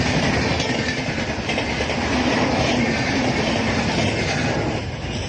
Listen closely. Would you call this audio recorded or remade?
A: recorded